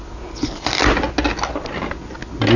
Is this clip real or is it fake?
real